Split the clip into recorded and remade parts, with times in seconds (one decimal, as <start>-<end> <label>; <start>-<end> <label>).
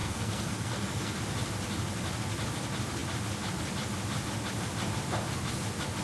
0.0-1.2 remade; 1.2-6.0 recorded